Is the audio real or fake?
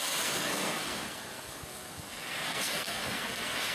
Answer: fake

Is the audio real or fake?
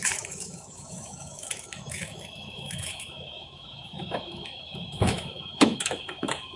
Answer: fake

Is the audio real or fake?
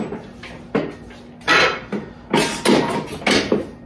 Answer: real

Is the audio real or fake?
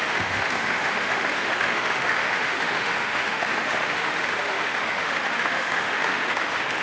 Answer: fake